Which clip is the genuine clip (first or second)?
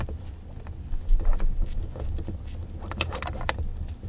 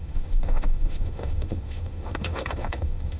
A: first